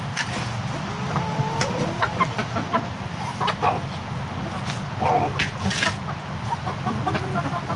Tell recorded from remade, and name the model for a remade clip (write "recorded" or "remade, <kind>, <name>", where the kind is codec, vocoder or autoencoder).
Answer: recorded